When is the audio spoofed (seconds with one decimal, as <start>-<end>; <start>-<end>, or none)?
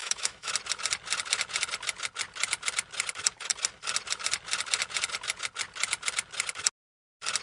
0.0-0.5